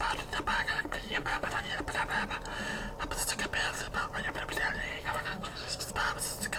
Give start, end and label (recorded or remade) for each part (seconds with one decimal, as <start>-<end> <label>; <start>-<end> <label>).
0.0-0.7 recorded; 0.7-1.7 remade; 1.7-4.9 recorded; 4.9-5.9 remade; 5.9-6.6 recorded